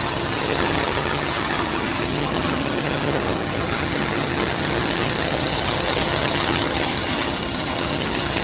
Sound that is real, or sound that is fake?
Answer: fake